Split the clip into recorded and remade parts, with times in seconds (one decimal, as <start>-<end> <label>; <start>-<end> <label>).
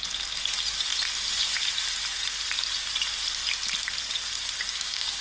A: 0.0-4.7 recorded; 4.7-5.2 remade